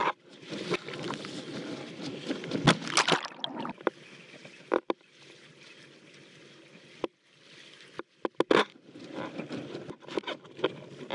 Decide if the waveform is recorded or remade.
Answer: recorded